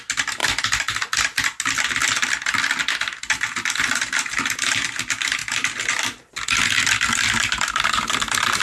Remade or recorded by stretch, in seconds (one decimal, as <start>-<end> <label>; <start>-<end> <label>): 0.0-8.6 recorded

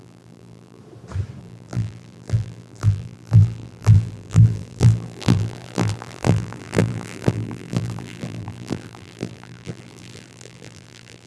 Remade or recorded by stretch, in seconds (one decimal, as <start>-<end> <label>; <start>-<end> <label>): 0.0-0.8 remade; 0.8-1.4 recorded; 1.4-11.3 remade